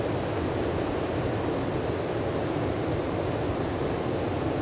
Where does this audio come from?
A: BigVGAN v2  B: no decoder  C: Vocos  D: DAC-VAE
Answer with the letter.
B